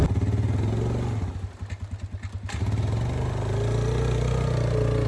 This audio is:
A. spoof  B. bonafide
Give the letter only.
B